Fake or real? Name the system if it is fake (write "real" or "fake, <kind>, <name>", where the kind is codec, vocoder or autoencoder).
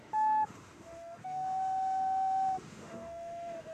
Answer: fake, autoencoder, DAC-VAE